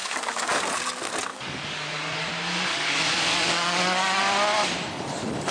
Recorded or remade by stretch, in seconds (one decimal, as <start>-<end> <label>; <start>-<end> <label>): 0.0-0.6 remade; 0.6-1.3 recorded; 1.3-2.3 remade; 2.3-2.7 recorded; 2.7-4.2 remade; 4.2-5.5 recorded